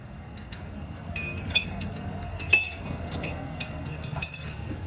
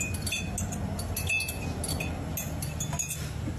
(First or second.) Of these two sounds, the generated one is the first